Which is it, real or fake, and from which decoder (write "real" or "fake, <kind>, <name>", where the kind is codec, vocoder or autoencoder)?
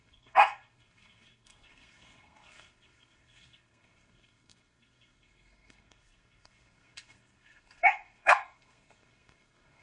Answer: fake, codec, SNAC